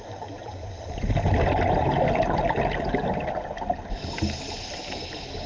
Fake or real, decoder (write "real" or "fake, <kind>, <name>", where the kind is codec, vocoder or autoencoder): real